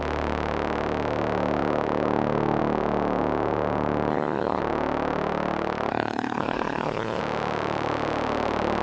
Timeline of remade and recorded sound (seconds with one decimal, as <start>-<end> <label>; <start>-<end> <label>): 0.0-4.1 recorded; 4.1-4.6 remade; 4.6-5.9 recorded; 5.9-7.2 remade; 7.2-8.8 recorded